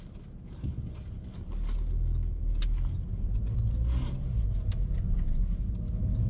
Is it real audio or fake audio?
real